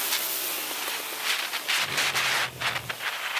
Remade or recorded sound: recorded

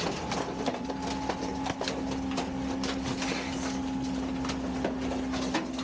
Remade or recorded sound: recorded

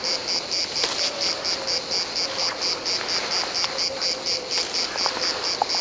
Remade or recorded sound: recorded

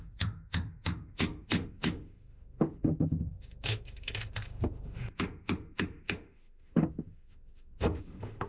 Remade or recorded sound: remade